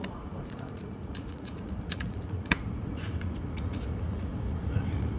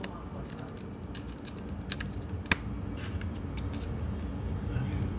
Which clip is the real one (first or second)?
second